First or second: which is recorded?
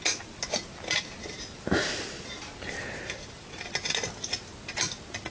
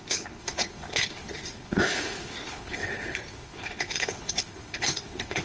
first